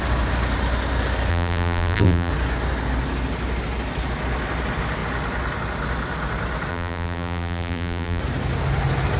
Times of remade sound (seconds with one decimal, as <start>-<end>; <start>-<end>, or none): 1.3-2.3; 6.7-8.2